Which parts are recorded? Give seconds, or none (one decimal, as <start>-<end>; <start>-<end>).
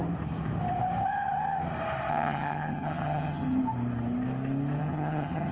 0.0-2.1; 3.6-4.8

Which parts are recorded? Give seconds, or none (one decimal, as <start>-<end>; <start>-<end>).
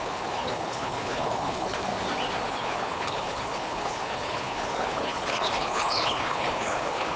1.9-2.5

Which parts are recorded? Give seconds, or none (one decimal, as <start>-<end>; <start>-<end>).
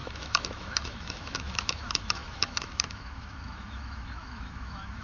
none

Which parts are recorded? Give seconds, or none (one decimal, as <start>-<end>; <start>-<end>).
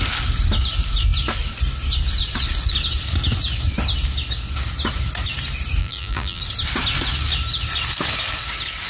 0.0-5.8; 6.4-8.9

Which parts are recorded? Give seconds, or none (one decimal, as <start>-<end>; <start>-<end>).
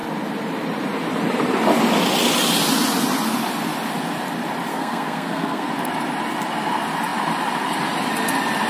0.0-4.7; 5.7-8.7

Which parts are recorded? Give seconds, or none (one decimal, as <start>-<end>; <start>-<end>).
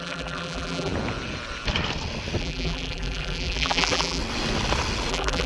0.9-2.4; 4.2-5.1